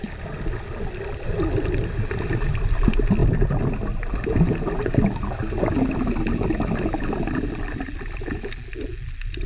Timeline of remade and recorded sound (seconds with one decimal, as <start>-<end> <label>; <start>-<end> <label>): 0.0-9.5 recorded